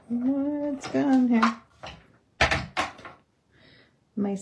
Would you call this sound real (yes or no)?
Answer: yes